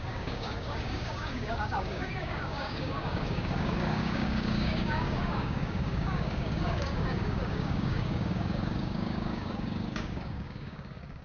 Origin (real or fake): fake